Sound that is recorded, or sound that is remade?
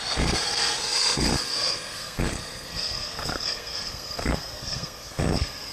remade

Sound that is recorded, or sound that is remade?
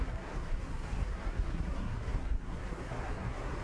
remade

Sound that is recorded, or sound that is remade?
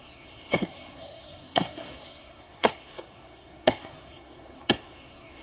remade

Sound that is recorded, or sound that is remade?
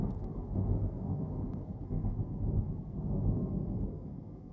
remade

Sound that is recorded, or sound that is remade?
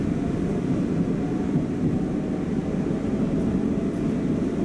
recorded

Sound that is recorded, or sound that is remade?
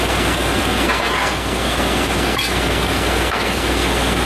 remade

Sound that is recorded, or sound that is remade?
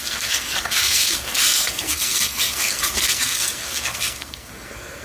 remade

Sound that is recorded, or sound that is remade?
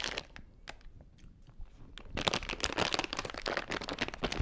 recorded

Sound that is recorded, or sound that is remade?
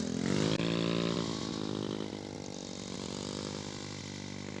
recorded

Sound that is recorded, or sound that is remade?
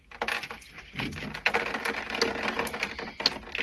recorded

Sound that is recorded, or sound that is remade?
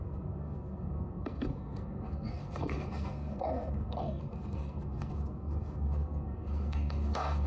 remade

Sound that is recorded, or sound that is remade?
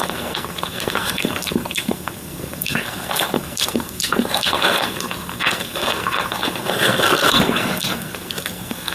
remade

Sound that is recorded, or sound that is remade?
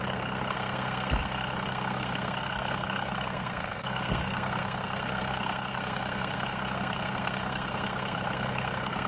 remade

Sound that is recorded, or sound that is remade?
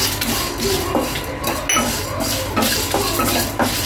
recorded